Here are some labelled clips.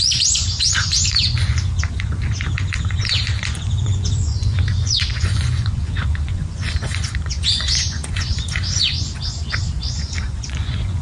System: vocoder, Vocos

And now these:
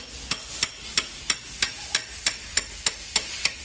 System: none